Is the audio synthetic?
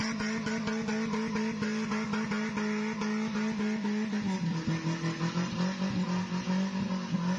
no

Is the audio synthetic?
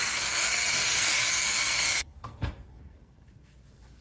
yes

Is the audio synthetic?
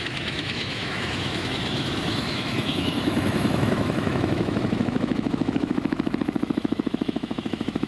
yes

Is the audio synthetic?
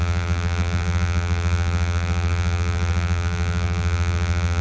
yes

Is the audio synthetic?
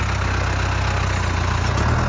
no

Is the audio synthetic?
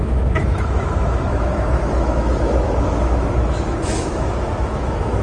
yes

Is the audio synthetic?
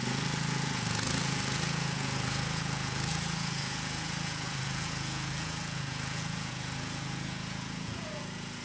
yes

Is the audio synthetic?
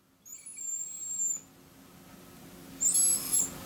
no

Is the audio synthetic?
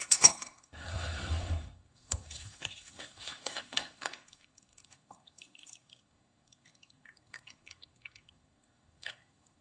yes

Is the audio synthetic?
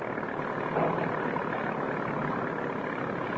no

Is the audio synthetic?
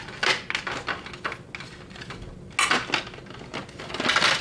no